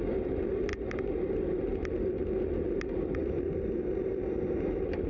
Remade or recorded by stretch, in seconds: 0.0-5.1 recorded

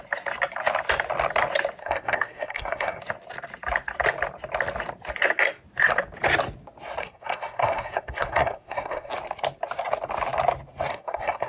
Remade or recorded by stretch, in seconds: 0.0-1.8 recorded; 1.8-3.0 remade; 3.0-7.0 recorded; 7.0-9.1 remade; 9.1-10.9 recorded; 10.9-11.5 remade

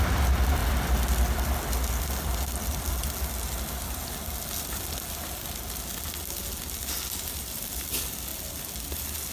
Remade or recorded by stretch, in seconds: 0.0-9.3 recorded

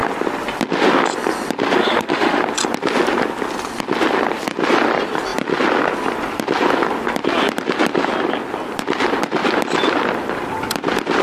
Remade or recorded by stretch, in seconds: 0.0-1.8 recorded; 1.8-2.4 remade; 2.4-11.2 recorded

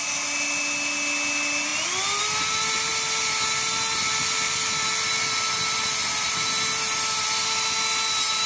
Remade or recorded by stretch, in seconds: 0.0-8.5 recorded